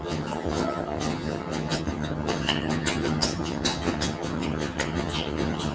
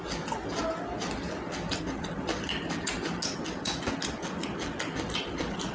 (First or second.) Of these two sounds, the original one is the second